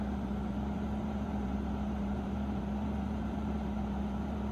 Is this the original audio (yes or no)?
no